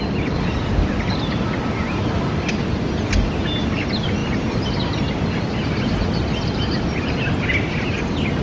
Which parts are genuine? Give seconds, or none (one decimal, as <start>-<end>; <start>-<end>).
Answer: 0.0-4.2; 7.1-8.4